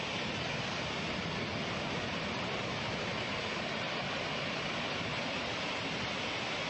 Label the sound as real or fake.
real